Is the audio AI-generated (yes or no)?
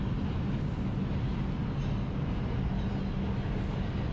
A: no